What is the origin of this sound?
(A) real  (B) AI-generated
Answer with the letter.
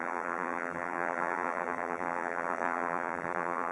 B